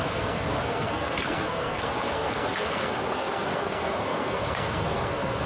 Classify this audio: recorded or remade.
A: remade